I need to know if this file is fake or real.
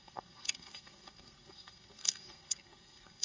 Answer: fake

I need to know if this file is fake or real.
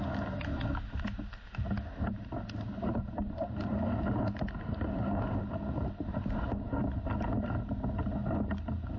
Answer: real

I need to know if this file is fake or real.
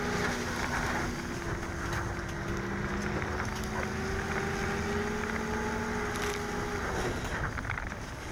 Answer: real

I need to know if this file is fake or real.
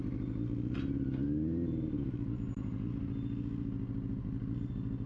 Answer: real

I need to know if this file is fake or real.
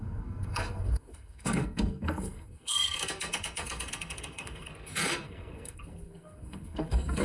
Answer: fake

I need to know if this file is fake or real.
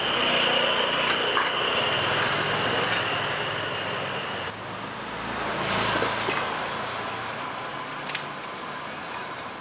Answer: real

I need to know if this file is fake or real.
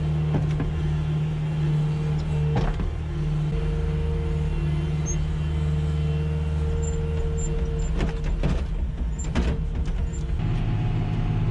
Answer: real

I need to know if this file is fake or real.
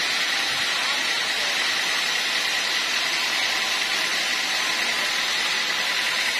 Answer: real